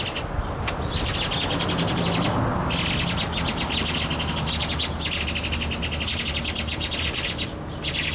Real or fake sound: real